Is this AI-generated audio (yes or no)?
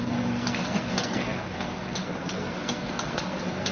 yes